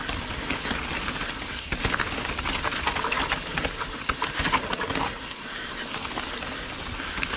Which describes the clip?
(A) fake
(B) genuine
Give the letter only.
B